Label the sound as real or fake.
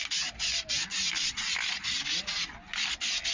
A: real